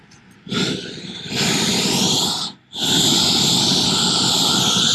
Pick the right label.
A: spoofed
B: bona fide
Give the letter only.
A